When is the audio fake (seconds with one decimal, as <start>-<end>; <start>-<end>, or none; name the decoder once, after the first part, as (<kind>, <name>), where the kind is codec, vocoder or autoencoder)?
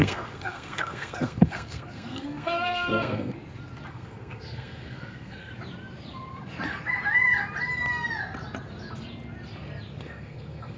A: 0.0-3.3 (codec, SNAC); 3.9-5.5; 10.0-10.8